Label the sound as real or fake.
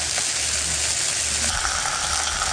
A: real